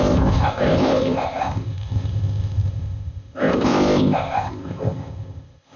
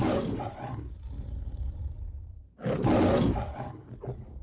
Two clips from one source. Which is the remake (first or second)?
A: first